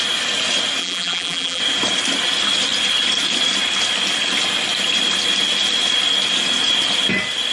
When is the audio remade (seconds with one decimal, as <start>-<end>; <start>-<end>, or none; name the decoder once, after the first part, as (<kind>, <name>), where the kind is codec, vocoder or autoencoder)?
0.8-1.6 (vocoder, BigVGAN v2)